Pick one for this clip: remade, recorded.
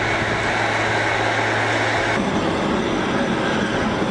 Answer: recorded